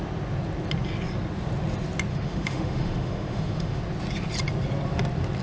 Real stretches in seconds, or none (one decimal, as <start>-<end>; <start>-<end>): 0.0-2.1; 3.8-5.4

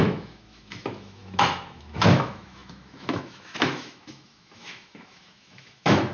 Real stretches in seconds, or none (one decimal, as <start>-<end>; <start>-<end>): none

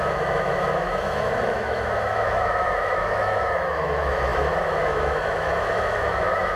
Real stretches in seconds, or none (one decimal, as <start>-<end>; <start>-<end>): none

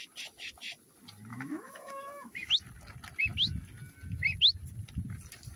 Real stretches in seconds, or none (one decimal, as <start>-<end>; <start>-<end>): 0.0-1.3; 2.5-5.6

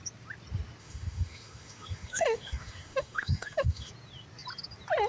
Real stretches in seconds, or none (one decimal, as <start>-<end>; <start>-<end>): 0.0-0.8; 3.9-5.1

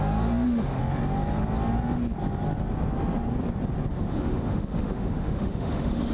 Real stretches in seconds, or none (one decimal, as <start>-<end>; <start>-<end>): 0.8-3.9